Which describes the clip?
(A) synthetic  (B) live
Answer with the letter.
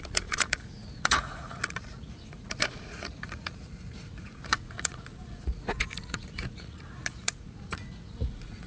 A